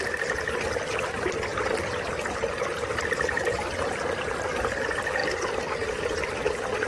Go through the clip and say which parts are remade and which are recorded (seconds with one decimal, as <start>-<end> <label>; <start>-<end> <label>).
0.0-1.5 recorded; 1.5-3.5 remade; 3.5-6.9 recorded